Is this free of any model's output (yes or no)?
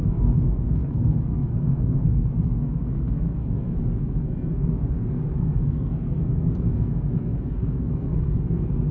no